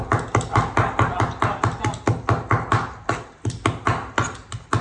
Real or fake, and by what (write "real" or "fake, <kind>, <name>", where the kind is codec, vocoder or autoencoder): real